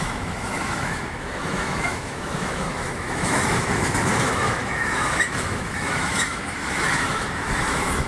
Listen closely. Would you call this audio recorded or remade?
remade